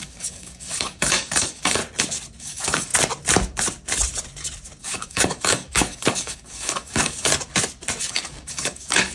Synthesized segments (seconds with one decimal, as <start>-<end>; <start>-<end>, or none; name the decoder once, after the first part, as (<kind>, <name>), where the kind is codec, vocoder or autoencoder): 0.0-1.8 (codec, DAC); 2.4-2.9; 4.8-7.3; 8.0-9.1